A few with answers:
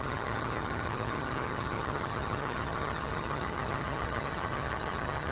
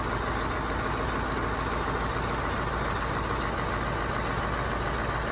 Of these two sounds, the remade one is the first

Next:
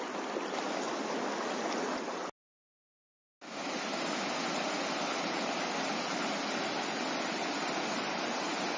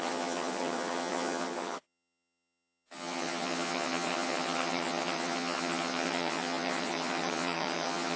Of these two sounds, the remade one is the second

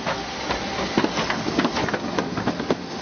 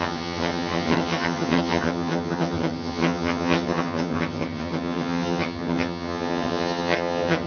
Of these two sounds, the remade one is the second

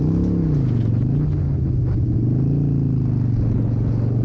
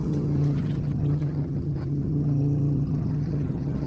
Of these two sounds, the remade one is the second